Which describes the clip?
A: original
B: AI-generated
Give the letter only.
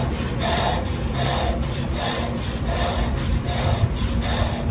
B